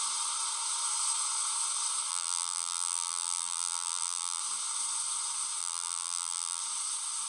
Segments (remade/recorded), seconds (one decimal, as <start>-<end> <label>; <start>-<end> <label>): 0.0-2.1 recorded; 2.1-4.4 remade; 4.4-5.6 recorded; 5.6-6.6 remade; 6.6-7.3 recorded

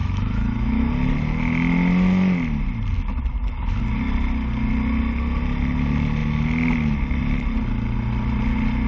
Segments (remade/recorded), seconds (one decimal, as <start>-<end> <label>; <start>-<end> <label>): 0.0-0.9 remade; 0.9-8.9 recorded

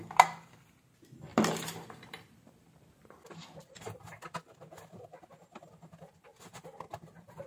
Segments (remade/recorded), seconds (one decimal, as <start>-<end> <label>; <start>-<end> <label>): 0.0-1.3 recorded; 1.3-4.1 remade; 4.1-5.6 recorded; 5.6-7.5 remade

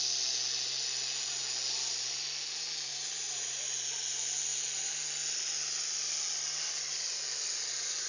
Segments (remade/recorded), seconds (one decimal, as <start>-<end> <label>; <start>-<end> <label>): 0.0-2.9 recorded; 2.9-3.6 remade; 3.6-8.1 recorded

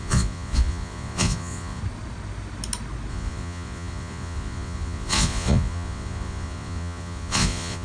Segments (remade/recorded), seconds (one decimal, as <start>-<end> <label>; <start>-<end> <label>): 0.0-1.8 remade; 1.8-3.1 recorded; 3.1-7.8 remade